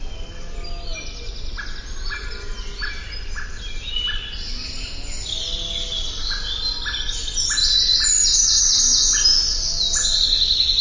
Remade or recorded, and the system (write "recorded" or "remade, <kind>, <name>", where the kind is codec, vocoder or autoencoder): recorded